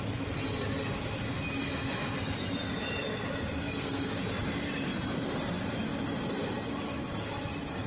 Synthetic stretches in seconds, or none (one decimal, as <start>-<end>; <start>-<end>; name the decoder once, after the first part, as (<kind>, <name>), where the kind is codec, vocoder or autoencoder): 3.6-4.2 (codec, SNAC)